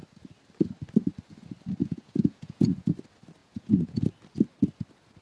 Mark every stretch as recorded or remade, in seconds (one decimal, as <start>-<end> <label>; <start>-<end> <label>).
0.0-1.8 recorded; 1.8-2.9 remade; 2.9-3.4 recorded; 3.4-4.0 remade; 4.0-5.2 recorded

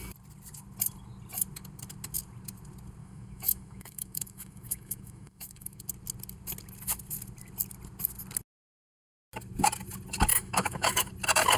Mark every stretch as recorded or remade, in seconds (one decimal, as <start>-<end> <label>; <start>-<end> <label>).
0.0-3.0 recorded; 3.0-5.8 remade; 5.8-10.3 recorded; 10.3-11.1 remade; 11.1-11.6 recorded

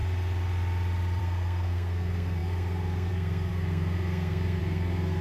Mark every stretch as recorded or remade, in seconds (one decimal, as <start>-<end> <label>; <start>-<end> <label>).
0.0-1.2 recorded; 1.2-5.2 remade

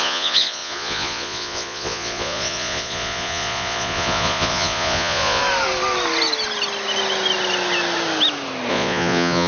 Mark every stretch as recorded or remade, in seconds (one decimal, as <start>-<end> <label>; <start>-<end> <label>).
0.0-5.4 remade; 5.4-8.7 recorded; 8.7-9.5 remade

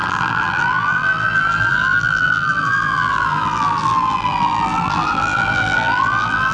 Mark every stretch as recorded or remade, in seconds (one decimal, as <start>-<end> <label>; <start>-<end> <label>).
0.0-6.5 remade